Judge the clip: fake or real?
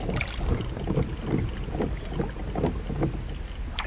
real